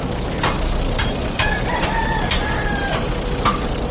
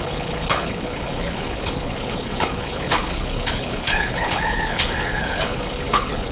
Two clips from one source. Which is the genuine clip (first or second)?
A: first